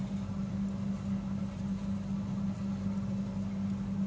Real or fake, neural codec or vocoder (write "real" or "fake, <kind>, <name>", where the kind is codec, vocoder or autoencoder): real